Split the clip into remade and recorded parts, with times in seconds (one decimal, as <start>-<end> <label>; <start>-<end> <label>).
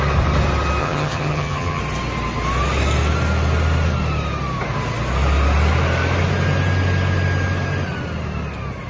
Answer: 0.0-0.8 recorded; 0.8-1.8 remade; 1.8-8.9 recorded